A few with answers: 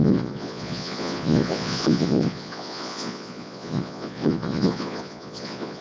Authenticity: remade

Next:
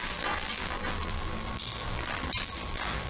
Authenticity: remade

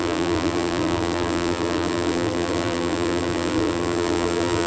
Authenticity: remade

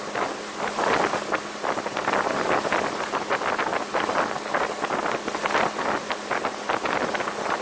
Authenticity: recorded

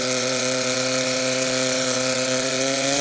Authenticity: remade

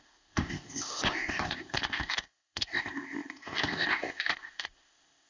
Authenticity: remade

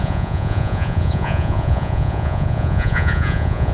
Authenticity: remade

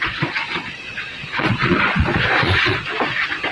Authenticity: remade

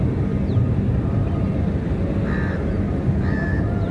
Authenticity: recorded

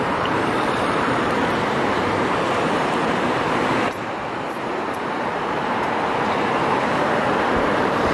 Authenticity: remade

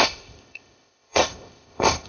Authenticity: remade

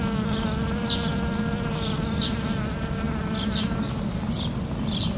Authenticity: recorded